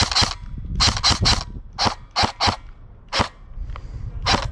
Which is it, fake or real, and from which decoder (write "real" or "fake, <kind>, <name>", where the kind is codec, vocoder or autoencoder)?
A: real